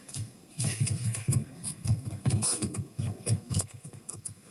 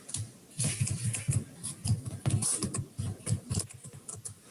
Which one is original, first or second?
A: second